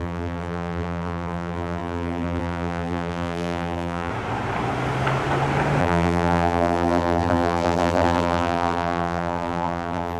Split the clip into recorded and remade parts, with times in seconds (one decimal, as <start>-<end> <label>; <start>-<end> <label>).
0.0-4.1 remade; 4.1-5.8 recorded; 5.8-10.2 remade